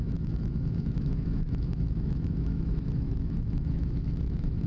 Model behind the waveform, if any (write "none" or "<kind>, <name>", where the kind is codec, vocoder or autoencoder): autoencoder, DAC-VAE